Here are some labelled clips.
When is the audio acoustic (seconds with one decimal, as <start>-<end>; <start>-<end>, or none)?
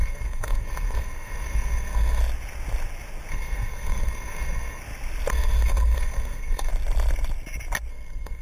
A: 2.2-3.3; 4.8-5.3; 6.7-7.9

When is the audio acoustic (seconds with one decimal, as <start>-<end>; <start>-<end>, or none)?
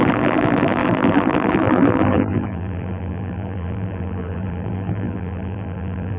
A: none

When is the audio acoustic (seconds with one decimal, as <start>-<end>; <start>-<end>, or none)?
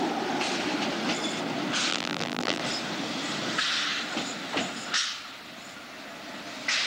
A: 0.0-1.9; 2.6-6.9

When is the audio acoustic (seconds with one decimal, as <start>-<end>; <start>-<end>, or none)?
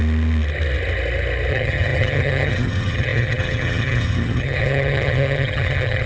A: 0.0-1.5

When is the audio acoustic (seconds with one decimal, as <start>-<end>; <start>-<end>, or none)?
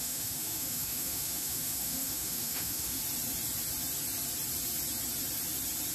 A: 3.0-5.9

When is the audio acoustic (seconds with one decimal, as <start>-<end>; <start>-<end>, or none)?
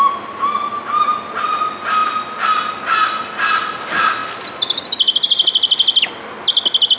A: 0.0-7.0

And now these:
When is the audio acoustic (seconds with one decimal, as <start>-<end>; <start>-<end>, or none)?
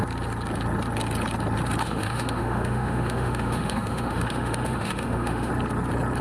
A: 0.0-1.8; 5.5-6.2